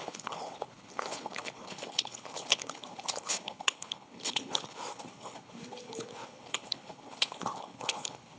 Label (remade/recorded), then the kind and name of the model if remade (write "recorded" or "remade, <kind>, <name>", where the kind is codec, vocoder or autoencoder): remade, codec, HILCodec